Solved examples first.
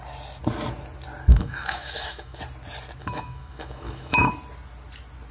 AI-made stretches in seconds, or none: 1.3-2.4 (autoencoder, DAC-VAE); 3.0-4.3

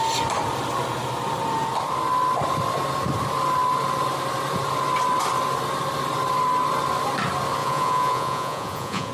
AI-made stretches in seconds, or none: 7.6-9.1 (vocoder, Vocos)

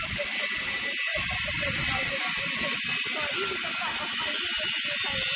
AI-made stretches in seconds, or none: none

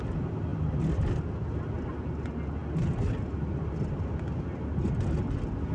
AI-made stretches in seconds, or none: none